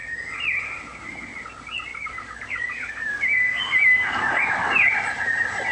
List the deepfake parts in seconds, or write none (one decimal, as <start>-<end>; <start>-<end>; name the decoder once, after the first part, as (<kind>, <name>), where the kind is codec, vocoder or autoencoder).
1.9-4.7 (codec, DAC)